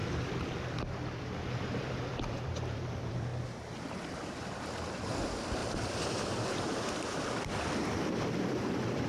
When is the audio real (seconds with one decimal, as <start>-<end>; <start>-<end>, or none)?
0.0-1.2; 3.3-4.1